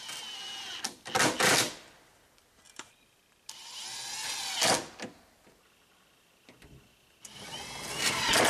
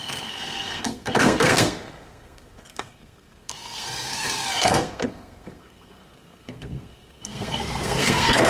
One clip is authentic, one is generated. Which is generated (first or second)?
second